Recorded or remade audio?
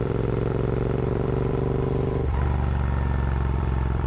remade